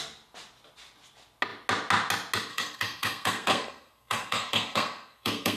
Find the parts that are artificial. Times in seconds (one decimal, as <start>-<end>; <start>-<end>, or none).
2.5-5.6